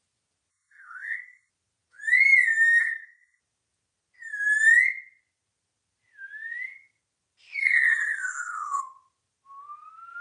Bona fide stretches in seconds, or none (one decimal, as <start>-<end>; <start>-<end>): 0.0-0.5; 1.5-2.8; 3.4-7.6; 8.8-10.2